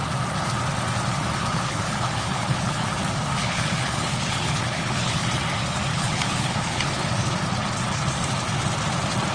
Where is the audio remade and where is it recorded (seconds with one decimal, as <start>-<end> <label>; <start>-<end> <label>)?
0.0-1.4 recorded; 1.4-2.9 remade; 2.9-3.4 recorded; 3.4-5.3 remade; 5.3-5.9 recorded; 5.9-6.9 remade; 6.9-9.3 recorded